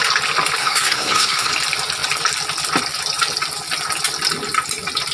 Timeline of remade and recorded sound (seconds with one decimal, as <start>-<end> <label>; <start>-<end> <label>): 0.0-0.6 recorded; 0.6-1.5 remade; 1.5-5.1 recorded